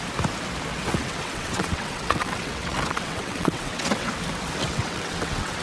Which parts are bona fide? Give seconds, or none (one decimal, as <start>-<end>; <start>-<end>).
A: 0.0-0.7; 4.1-4.6